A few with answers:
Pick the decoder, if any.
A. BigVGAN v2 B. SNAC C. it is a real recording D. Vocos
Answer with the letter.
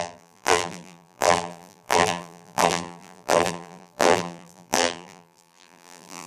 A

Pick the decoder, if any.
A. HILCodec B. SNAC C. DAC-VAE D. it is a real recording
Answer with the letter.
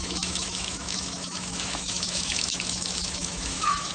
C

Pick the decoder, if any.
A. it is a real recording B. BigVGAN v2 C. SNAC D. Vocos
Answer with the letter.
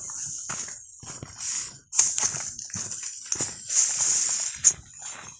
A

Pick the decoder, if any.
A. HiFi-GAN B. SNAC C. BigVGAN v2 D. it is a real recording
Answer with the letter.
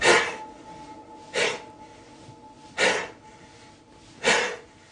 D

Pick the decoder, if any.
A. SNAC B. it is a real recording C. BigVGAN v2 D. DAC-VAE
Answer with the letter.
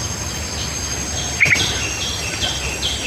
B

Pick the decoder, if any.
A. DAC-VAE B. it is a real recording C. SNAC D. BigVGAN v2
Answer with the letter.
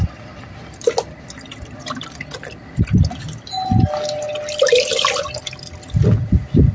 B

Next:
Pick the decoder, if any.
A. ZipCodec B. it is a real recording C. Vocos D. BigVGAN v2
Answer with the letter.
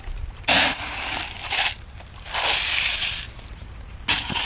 B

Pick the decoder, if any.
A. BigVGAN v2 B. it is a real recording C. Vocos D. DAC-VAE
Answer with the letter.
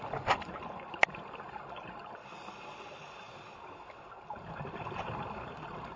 B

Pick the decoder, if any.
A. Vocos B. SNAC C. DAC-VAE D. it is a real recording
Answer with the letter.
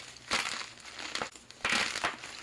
D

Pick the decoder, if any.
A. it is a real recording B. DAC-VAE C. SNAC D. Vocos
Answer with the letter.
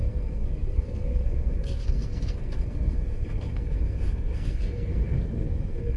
C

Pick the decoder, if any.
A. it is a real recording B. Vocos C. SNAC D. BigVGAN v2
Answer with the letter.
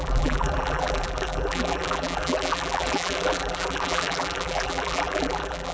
D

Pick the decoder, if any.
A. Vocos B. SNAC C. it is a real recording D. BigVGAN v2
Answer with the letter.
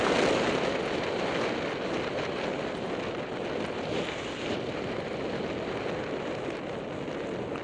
C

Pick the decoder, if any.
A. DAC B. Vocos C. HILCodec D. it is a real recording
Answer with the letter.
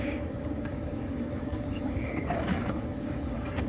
A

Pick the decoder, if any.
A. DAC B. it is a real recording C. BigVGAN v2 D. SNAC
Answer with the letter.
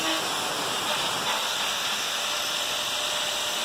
B